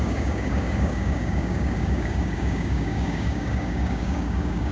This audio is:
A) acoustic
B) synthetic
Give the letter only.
B